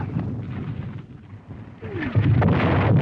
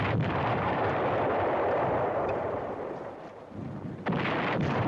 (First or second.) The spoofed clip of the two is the second